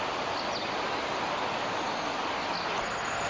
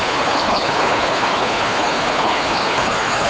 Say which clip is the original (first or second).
first